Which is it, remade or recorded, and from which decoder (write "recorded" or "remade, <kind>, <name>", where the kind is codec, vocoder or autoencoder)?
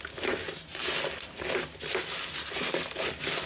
recorded